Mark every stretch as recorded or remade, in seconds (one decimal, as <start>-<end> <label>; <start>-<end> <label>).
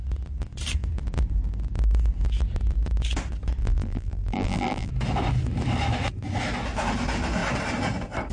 0.0-3.6 recorded; 3.6-4.9 remade; 4.9-8.3 recorded